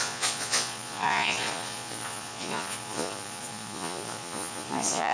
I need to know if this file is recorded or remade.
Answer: remade